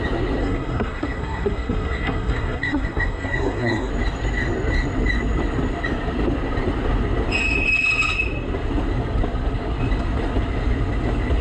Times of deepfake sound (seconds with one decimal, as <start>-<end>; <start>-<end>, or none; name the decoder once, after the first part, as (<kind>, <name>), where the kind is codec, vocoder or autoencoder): 0.4-3.9 (codec, SNAC)